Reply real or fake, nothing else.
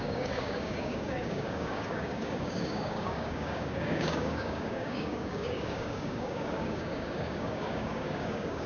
fake